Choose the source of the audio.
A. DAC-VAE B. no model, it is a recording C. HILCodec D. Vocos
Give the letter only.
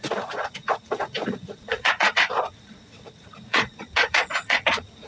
D